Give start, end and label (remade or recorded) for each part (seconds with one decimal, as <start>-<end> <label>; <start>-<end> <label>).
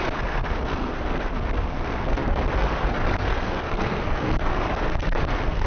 0.0-5.7 remade